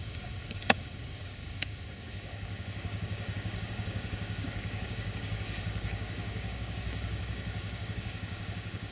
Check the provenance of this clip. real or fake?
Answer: fake